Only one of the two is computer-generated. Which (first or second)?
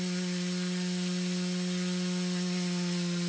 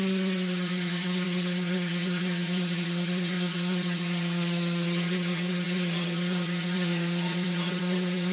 second